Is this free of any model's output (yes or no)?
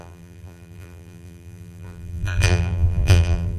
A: no